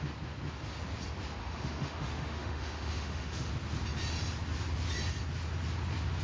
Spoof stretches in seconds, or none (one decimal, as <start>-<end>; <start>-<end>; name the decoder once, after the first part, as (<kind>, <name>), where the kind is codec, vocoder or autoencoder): 1.4-3.5 (autoencoder, DAC-VAE)